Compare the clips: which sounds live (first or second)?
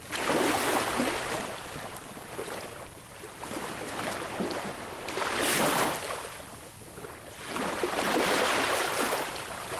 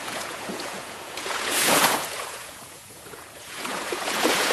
first